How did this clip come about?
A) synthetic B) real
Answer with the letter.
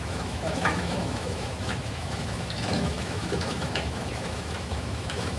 A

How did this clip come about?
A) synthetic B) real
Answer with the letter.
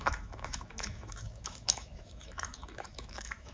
A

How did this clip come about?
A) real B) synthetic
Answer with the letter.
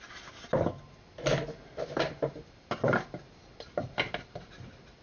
A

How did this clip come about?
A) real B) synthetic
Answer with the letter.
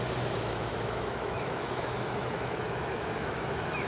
B